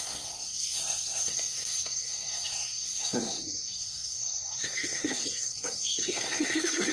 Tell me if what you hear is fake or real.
fake